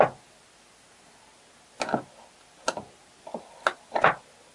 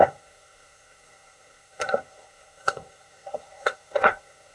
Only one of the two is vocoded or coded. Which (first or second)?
second